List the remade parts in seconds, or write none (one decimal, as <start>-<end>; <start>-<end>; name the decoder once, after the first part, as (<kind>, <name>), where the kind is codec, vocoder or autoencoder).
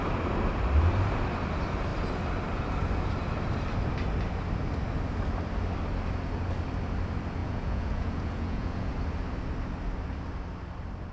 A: 7.4-8.9 (vocoder, Vocos)